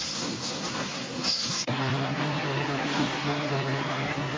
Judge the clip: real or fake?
fake